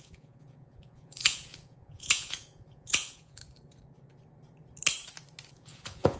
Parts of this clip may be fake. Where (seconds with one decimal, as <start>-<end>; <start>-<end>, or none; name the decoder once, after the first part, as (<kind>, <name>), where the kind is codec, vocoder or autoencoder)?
0.0-3.4 (vocoder, Vocos); 5.5-6.2